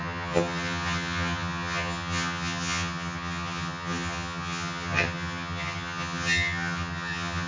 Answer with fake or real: fake